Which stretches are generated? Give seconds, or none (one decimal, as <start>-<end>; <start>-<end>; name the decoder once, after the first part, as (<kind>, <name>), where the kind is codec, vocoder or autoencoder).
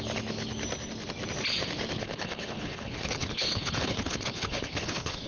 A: 2.0-5.3 (codec, HILCodec)